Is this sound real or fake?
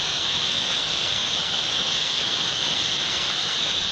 fake